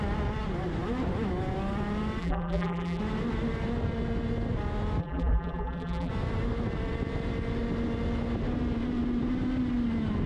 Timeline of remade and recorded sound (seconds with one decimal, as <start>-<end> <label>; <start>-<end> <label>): 0.0-2.2 recorded; 2.2-3.0 remade; 3.0-5.0 recorded; 5.0-6.1 remade; 6.1-10.3 recorded